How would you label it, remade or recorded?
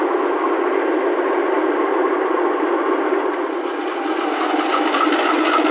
recorded